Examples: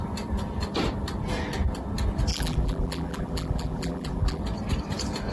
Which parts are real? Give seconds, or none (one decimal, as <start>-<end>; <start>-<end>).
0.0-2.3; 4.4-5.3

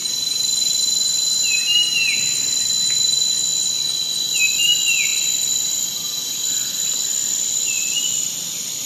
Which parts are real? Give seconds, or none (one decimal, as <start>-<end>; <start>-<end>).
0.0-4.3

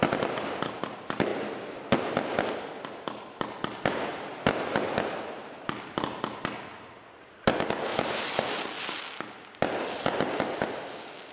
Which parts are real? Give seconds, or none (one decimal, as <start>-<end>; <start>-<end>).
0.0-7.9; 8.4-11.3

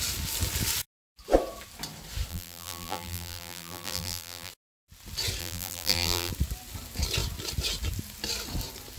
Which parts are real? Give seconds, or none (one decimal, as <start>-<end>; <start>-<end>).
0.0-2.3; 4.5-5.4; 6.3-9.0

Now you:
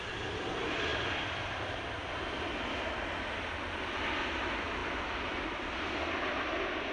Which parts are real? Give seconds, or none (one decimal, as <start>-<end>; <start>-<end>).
0.0-6.9

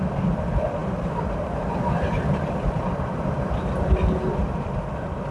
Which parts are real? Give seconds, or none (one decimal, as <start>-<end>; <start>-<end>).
0.0-0.8; 4.0-5.3

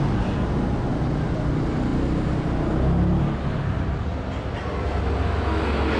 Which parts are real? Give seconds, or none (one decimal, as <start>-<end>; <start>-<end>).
0.0-0.9; 1.5-1.9; 2.7-6.0

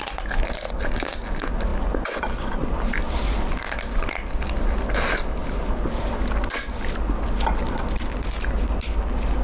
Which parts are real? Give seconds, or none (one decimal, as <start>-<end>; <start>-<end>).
0.0-9.4